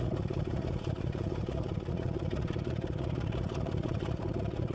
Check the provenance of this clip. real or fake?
fake